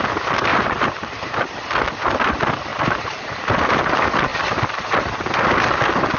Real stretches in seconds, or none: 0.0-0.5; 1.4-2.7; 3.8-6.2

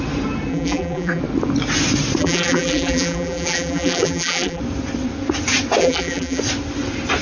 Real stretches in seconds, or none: 0.0-0.5; 1.2-2.2; 4.6-5.8; 6.4-7.2

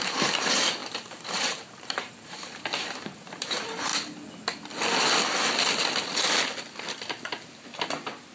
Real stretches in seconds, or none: 3.9-8.3

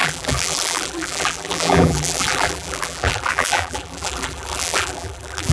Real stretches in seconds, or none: none

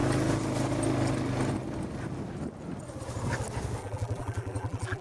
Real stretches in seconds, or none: 0.0-3.8